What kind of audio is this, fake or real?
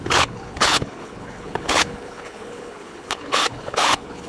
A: fake